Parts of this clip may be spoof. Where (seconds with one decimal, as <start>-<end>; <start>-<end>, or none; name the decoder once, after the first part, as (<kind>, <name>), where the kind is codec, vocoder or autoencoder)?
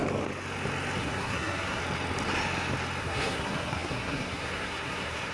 1.0-1.8 (codec, SNAC); 3.0-5.3